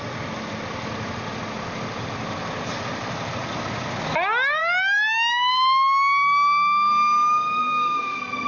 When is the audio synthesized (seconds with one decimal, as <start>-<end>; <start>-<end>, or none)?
7.6-8.5